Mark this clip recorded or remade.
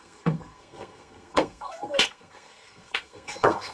remade